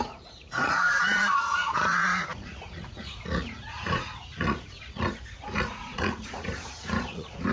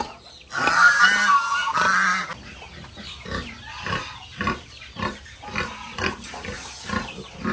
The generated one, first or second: first